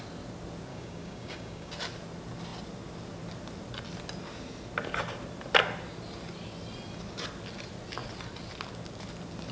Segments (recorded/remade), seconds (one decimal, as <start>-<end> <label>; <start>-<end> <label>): 0.0-0.7 recorded; 0.7-1.7 remade; 1.7-9.5 recorded